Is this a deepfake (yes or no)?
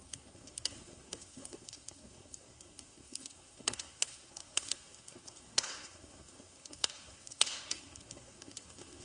yes